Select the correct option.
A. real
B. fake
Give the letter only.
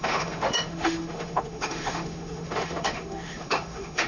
B